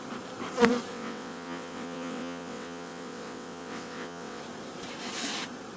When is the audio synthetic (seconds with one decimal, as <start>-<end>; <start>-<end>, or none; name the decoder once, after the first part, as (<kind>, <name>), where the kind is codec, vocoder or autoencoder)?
0.9-4.4 (vocoder, WaveNeXt)

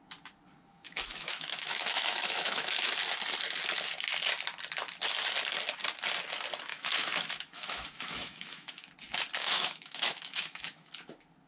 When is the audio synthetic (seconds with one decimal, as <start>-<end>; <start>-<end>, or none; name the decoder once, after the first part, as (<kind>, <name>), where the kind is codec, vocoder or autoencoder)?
0.7-2.9 (autoencoder, DAC-VAE); 6.7-8.9; 9.4-10.9

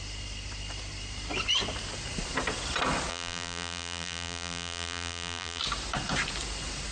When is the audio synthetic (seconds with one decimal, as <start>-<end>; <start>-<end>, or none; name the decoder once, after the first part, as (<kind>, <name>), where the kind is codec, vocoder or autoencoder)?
3.1-5.6 (vocoder, BigVGAN v2)

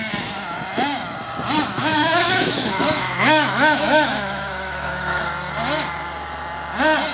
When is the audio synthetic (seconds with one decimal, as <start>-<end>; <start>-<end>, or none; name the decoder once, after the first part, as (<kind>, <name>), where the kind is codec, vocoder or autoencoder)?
1.8-5.2 (autoencoder, DAC-VAE)

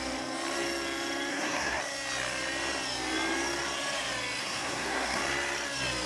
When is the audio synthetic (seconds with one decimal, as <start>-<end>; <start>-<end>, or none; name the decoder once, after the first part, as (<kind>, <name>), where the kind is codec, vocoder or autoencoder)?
1.3-1.8 (codec, SNAC); 4.4-5.2

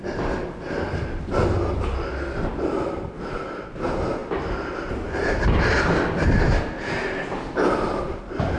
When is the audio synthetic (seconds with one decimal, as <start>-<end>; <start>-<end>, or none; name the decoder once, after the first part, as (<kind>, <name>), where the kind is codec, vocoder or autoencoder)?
none

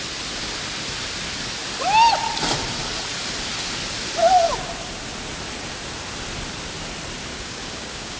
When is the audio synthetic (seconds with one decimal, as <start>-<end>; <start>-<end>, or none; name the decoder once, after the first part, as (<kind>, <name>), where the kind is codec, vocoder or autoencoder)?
7.3-8.2 (codec, DAC)